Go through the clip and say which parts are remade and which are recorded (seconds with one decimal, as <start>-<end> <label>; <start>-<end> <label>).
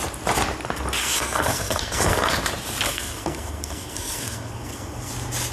0.0-1.0 recorded; 1.0-2.3 remade; 2.3-2.9 recorded; 2.9-5.1 remade; 5.1-5.5 recorded